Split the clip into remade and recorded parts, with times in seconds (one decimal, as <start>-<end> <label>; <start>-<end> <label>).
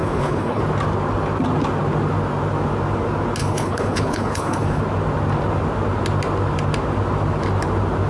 0.0-0.6 remade; 0.6-3.4 recorded; 3.4-4.8 remade; 4.8-8.1 recorded